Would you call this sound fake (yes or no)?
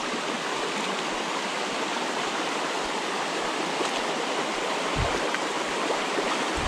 no